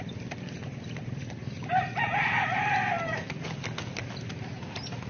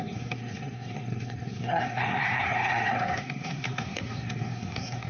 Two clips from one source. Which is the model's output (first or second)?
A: second